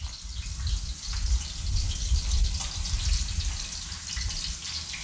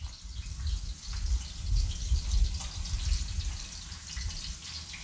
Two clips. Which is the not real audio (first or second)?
first